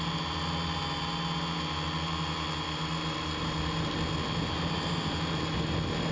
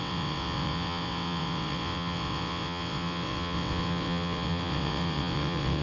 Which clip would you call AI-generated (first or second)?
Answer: second